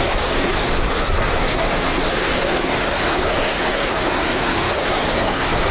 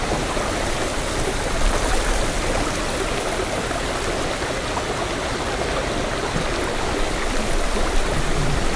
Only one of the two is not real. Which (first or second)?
first